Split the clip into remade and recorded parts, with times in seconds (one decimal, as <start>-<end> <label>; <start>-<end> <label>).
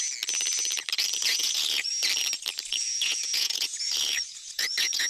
0.0-1.3 recorded; 1.3-1.9 remade; 1.9-2.8 recorded; 2.8-5.1 remade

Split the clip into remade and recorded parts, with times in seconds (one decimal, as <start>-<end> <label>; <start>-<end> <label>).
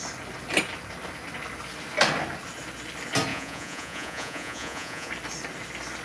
0.0-3.3 recorded; 3.3-5.1 remade; 5.1-6.0 recorded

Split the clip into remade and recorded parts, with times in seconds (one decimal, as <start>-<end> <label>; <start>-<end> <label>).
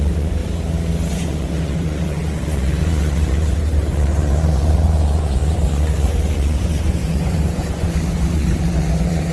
0.0-0.4 remade; 0.4-1.1 recorded; 1.1-9.3 remade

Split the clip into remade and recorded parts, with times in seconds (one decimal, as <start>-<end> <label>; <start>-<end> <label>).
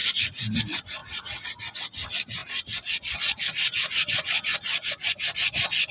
0.0-1.0 recorded; 1.0-1.6 remade; 1.6-5.9 recorded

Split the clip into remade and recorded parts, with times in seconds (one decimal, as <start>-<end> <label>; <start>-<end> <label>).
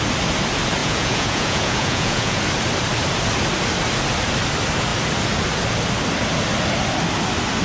0.0-0.8 recorded; 0.8-2.4 remade; 2.4-7.6 recorded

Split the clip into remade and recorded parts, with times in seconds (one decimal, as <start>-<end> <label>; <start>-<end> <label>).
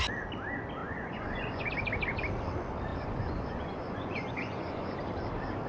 0.0-0.8 recorded; 0.8-1.7 remade; 1.7-2.9 recorded; 2.9-5.0 remade; 5.0-5.7 recorded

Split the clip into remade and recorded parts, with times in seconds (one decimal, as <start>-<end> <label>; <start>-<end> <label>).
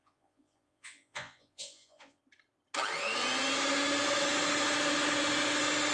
0.0-2.2 remade; 2.2-5.9 recorded